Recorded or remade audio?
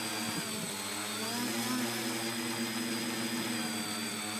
recorded